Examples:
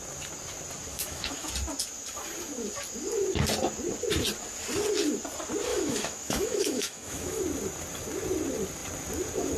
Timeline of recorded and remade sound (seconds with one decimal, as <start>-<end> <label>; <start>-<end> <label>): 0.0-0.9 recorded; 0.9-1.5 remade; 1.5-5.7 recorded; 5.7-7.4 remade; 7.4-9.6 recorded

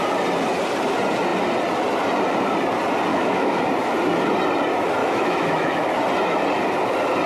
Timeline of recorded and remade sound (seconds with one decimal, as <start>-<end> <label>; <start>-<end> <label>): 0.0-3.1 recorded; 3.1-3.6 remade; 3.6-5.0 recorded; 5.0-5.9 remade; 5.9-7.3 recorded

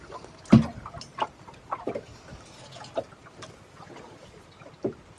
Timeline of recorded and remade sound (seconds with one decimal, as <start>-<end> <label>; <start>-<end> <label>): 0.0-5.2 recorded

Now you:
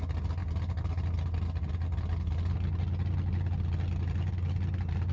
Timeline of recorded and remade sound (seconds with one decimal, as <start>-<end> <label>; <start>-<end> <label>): 0.0-5.1 recorded